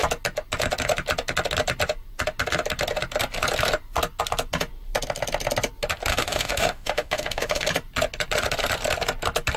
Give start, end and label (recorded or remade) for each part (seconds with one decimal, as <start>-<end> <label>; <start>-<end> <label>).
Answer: 0.0-6.1 recorded; 6.1-7.7 remade; 7.7-9.6 recorded